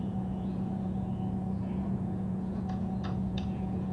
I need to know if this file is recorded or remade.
remade